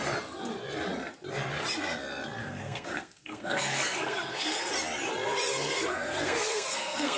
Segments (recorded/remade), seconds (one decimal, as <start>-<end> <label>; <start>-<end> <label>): 0.0-2.4 recorded; 2.4-4.7 remade; 4.7-5.5 recorded; 5.5-7.2 remade